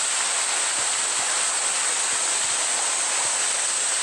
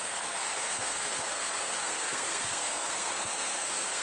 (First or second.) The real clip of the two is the first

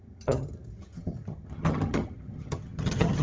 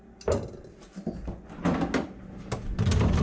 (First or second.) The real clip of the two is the second